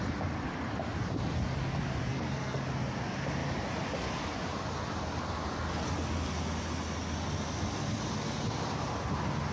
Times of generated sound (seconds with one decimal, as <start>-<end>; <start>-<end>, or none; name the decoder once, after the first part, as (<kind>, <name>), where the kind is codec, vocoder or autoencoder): 2.1-2.6 (codec, SNAC)